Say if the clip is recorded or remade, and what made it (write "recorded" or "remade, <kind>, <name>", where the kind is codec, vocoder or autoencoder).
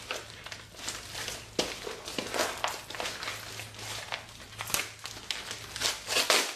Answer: recorded